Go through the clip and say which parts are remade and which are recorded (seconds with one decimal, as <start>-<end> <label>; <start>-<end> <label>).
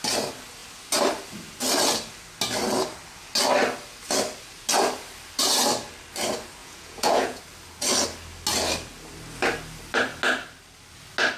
0.0-6.6 recorded; 6.6-7.4 remade; 7.4-11.4 recorded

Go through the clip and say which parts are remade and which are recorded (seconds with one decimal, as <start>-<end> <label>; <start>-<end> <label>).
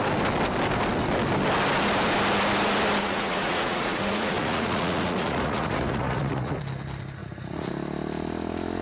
0.0-3.0 recorded; 3.0-6.6 remade; 6.6-7.2 recorded; 7.2-7.7 remade; 7.7-8.8 recorded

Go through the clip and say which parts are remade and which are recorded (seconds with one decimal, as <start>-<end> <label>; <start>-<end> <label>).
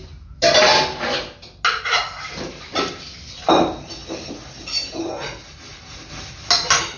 0.0-7.0 recorded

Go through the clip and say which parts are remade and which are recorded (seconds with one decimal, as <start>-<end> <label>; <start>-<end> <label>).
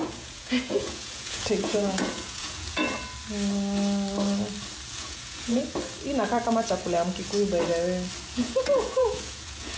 0.0-2.8 remade; 2.8-4.9 recorded; 4.9-5.6 remade; 5.6-8.3 recorded; 8.3-9.8 remade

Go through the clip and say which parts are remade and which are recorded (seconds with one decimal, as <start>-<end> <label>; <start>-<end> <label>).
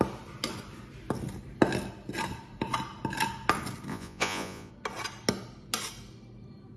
0.0-3.9 recorded; 3.9-4.7 remade; 4.7-6.8 recorded